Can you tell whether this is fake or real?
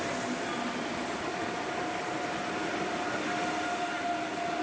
real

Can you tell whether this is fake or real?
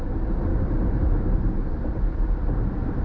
fake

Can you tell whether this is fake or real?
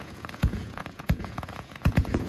fake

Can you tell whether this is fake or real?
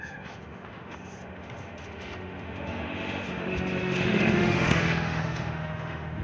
fake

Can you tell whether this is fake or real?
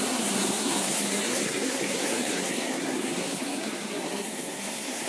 fake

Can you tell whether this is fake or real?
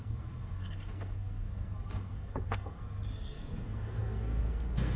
fake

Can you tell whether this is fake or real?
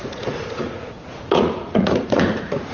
fake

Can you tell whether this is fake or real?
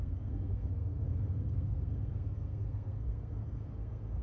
fake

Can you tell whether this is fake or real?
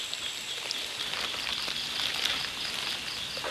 real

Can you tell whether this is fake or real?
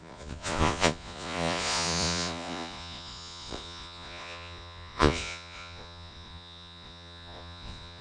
fake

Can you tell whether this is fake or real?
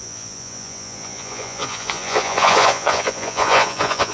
fake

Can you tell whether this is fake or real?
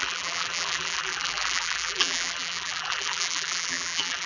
fake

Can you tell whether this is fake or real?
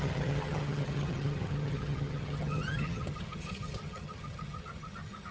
fake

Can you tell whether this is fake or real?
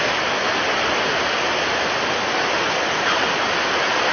real